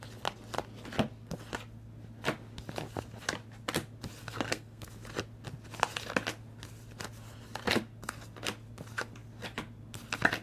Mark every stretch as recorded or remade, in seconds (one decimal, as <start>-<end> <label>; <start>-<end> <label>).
0.0-4.2 recorded; 4.2-4.9 remade; 4.9-10.4 recorded

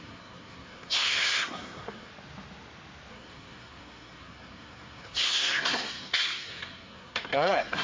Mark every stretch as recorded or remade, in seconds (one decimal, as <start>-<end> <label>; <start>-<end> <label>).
0.0-2.1 remade; 2.1-3.1 recorded; 3.1-7.8 remade